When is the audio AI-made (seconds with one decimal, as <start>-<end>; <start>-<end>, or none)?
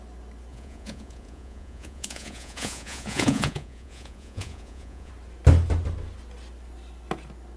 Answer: 0.5-5.1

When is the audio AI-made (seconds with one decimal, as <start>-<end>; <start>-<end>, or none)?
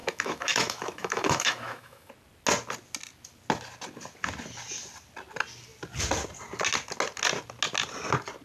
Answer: 0.0-2.1